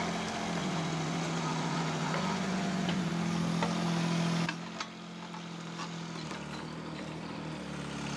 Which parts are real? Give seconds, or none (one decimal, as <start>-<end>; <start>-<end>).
0.0-0.6; 3.1-8.2